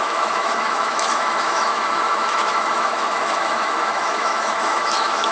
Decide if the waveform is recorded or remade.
remade